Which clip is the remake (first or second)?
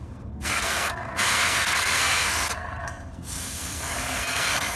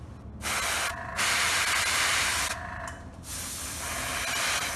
first